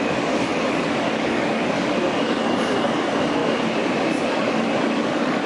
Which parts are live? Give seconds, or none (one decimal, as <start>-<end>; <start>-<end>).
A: 3.4-4.2